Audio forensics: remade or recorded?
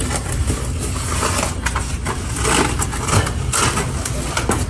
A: recorded